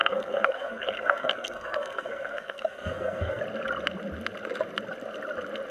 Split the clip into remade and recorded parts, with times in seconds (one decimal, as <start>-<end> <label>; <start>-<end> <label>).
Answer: 0.0-3.4 remade; 3.4-5.7 recorded